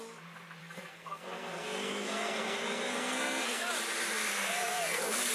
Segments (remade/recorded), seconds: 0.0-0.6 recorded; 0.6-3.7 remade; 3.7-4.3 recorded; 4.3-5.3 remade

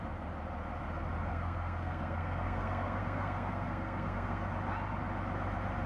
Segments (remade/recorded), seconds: 0.0-1.3 recorded; 1.3-4.5 remade; 4.5-5.9 recorded

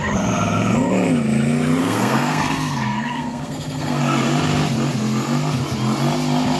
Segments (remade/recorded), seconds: 0.0-1.8 recorded; 1.8-4.0 remade; 4.0-6.6 recorded

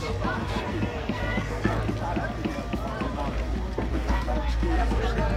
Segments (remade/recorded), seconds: 0.0-0.4 recorded; 0.4-1.8 remade; 1.8-3.9 recorded; 3.9-5.0 remade; 5.0-5.4 recorded

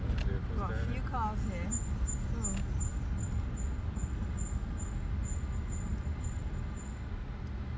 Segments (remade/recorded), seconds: 0.0-7.8 recorded